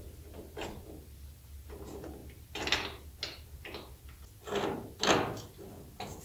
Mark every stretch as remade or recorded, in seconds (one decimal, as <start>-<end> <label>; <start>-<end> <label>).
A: 0.0-6.2 recorded